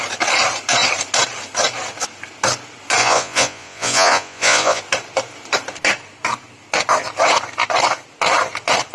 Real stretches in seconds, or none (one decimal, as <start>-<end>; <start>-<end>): 0.0-3.0; 4.8-8.9